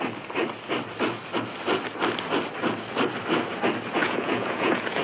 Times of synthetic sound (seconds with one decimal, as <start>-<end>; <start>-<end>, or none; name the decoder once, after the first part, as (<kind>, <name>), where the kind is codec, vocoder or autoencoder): 4.0-5.0 (vocoder, Vocos)